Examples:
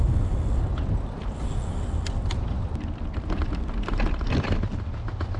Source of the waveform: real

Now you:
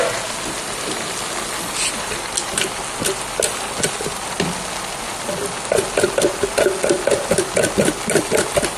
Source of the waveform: real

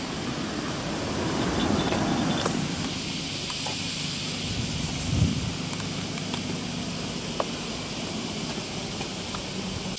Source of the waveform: real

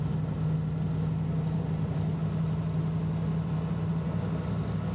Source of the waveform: real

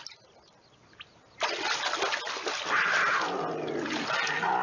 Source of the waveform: real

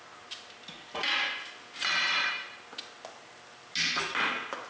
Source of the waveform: real